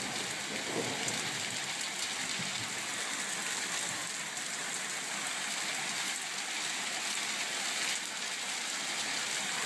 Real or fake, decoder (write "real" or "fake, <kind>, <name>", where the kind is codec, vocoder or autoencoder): real